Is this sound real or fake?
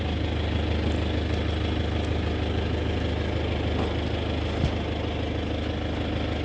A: real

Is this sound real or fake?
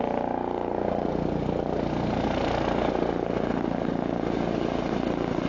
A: real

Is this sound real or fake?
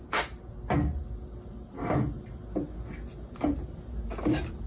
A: real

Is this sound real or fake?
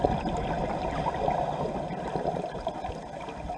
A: real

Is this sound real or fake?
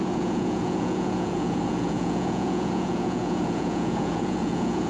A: fake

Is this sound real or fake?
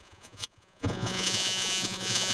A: fake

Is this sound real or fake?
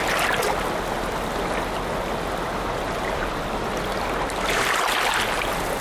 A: real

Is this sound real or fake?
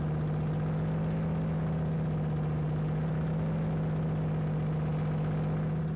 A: real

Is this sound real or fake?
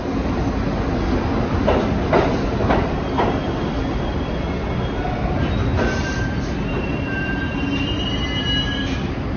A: real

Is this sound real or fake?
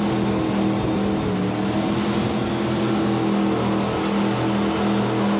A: real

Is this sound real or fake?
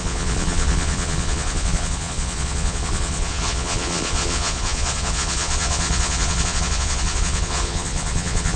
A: fake